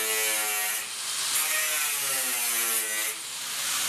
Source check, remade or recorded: recorded